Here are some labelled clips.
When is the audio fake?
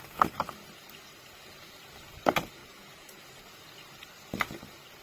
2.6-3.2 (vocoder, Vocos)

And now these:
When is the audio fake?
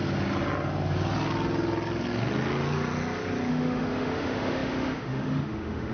3.5-5.9 (autoencoder, DAC-VAE)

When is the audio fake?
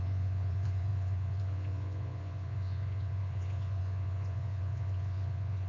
0.0-5.7 (vocoder, Vocos)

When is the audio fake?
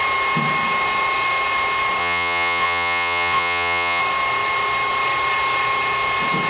2.0-4.0 (vocoder, Vocos)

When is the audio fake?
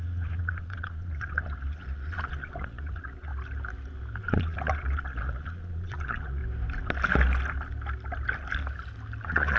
0.0-3.3 (vocoder, Vocos); 4.2-6.4; 9.2-9.6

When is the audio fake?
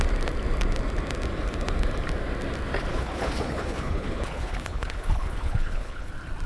2.9-6.1 (codec, HILCodec)